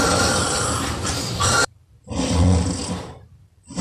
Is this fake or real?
fake